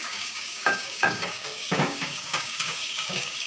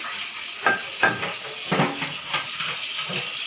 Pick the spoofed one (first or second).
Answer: first